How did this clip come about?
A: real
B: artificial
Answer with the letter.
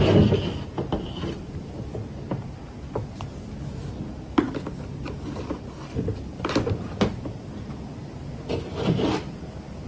A